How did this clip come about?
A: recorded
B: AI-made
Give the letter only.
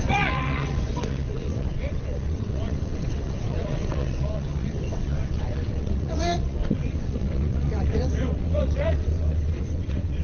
B